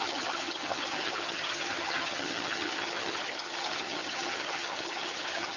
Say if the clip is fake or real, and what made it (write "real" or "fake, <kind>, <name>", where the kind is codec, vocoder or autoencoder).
fake, vocoder, HiFi-GAN